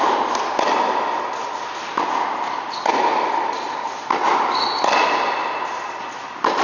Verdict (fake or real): real